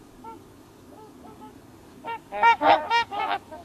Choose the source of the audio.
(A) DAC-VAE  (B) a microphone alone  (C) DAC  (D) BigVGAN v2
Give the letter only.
C